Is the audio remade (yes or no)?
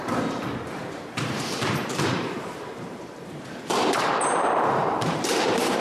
yes